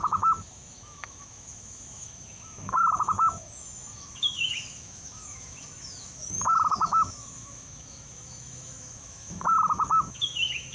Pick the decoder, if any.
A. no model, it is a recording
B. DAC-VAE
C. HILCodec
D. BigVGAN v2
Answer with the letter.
B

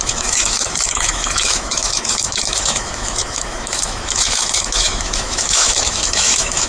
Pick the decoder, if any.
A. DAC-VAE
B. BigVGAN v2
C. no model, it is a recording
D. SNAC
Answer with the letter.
A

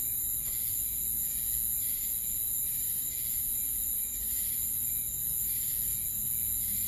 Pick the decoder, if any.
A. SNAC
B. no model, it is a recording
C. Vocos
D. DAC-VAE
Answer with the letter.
B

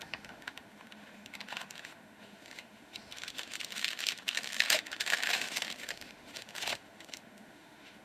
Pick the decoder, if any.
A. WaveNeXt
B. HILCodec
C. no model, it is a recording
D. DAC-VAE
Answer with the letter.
D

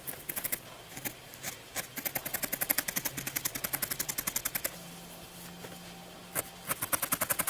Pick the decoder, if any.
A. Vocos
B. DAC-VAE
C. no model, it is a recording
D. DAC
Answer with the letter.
C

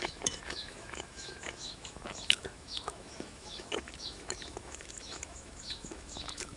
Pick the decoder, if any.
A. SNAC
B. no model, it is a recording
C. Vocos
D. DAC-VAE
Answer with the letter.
D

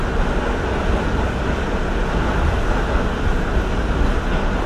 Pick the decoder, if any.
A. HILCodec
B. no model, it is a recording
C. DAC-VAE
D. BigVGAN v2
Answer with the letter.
B